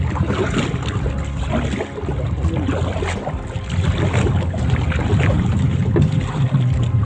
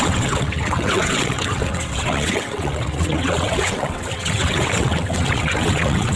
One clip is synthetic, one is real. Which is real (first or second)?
first